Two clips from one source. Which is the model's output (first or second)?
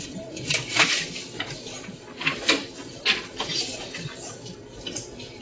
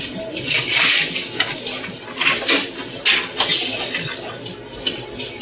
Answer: first